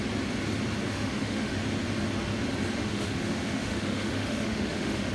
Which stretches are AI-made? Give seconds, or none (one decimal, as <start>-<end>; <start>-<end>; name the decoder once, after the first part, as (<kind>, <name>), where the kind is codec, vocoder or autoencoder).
0.9-1.6 (autoencoder, DAC-VAE); 2.8-5.1